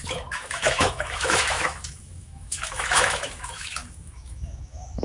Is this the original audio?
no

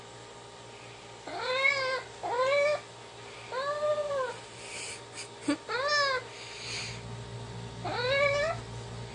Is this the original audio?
yes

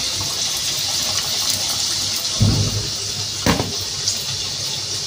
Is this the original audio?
yes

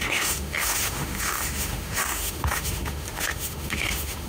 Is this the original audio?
no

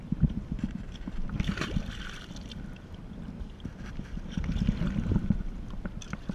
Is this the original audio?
yes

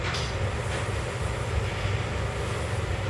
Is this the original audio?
yes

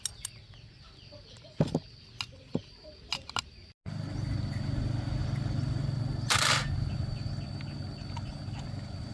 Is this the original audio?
yes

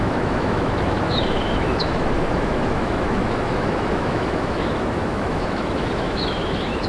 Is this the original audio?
no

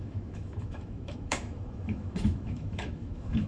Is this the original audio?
no